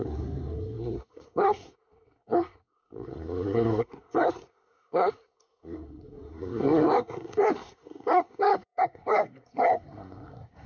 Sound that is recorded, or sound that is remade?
remade